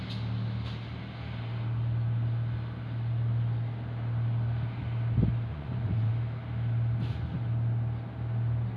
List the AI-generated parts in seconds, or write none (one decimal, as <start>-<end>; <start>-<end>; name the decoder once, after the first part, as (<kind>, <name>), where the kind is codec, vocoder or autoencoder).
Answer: 5.5-6.1 (vocoder, Vocos)